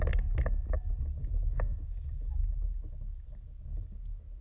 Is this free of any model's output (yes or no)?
yes